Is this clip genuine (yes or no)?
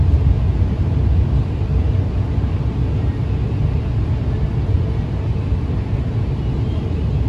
yes